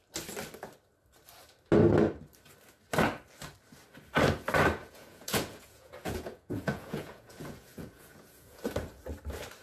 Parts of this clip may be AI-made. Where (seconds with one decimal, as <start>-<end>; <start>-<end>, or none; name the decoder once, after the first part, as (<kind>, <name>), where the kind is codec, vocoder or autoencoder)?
4.8-8.6 (vocoder, Vocos)